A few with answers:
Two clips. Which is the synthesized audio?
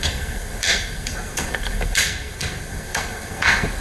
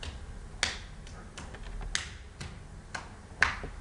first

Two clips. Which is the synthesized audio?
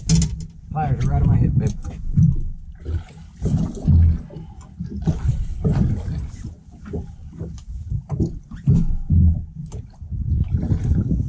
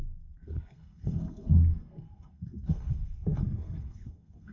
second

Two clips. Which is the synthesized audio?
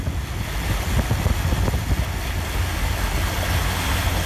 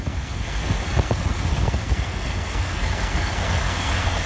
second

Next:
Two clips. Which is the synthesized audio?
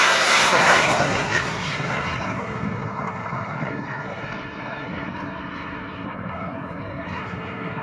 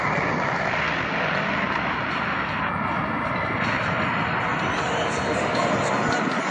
first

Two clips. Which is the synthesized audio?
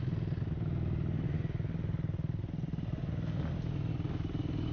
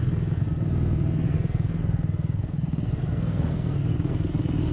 second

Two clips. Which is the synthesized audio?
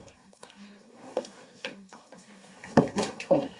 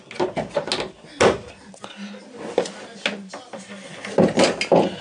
first